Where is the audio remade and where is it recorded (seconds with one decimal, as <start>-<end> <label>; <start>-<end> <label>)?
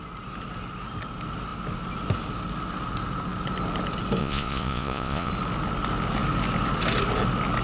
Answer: 0.0-4.2 recorded; 4.2-5.3 remade; 5.3-7.6 recorded